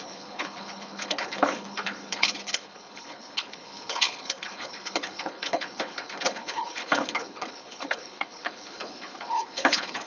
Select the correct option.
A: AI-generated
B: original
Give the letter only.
A